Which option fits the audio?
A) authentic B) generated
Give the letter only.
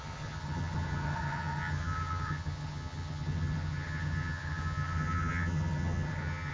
B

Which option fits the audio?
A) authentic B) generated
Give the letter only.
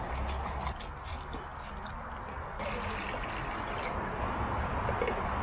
A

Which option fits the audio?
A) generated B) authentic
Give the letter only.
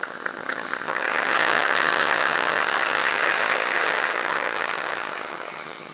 A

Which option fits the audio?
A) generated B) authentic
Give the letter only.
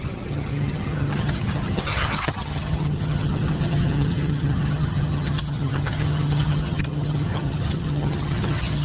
A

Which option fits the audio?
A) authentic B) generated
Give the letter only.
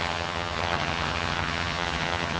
B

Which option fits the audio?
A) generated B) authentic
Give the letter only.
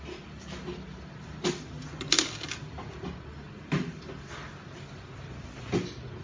B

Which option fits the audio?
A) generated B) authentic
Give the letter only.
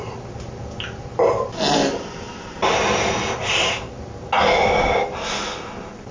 B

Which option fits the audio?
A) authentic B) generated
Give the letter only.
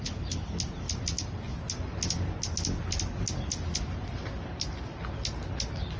A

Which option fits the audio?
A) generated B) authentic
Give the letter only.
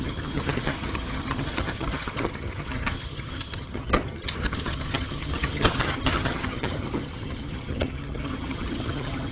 A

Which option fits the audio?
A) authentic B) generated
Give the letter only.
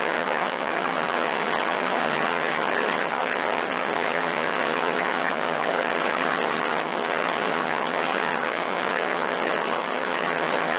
B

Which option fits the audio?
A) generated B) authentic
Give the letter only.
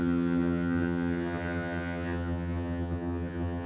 A